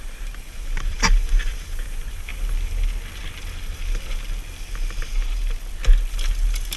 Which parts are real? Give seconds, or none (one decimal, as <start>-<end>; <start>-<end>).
2.3-6.8